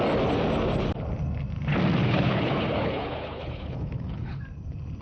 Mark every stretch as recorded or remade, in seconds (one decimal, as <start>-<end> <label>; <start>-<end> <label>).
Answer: 0.0-2.0 recorded; 2.0-4.4 remade; 4.4-5.0 recorded